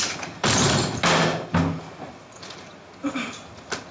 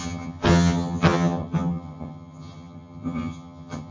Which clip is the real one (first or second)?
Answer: first